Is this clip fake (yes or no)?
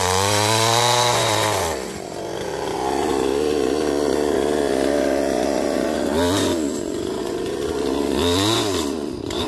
yes